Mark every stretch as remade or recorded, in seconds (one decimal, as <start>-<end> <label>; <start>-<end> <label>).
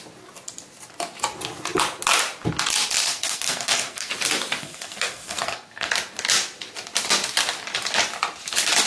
0.0-3.1 recorded; 3.1-4.1 remade; 4.1-4.6 recorded; 4.6-5.9 remade; 5.9-8.9 recorded